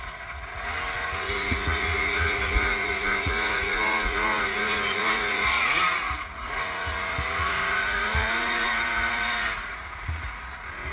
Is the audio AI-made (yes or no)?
yes